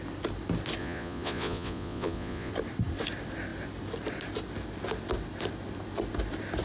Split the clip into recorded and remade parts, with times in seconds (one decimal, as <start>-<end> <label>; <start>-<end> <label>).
0.0-0.8 recorded; 0.8-2.5 remade; 2.5-6.6 recorded